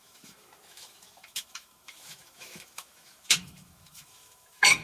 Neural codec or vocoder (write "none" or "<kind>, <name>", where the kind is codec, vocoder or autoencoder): autoencoder, DAC-VAE